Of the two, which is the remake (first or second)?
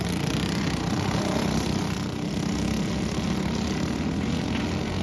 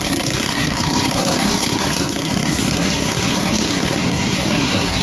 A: second